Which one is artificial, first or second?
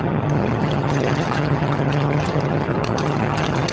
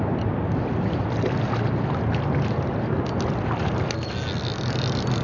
first